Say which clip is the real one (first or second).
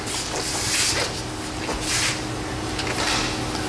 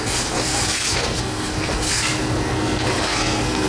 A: first